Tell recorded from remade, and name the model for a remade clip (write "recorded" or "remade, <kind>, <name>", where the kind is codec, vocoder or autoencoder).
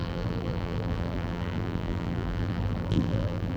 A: remade, vocoder, BigVGAN v2